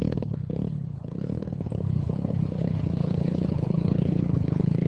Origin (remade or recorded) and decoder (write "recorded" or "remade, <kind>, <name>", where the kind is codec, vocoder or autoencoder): remade, codec, HILCodec